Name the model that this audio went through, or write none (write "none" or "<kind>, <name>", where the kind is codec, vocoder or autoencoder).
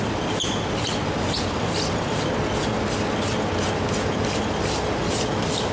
none